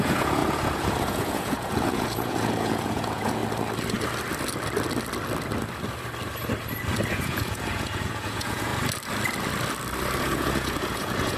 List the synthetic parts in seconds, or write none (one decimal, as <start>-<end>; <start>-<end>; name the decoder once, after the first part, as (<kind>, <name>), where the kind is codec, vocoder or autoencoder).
0.0-3.4 (vocoder, Vocos); 7.1-8.7; 10.2-11.4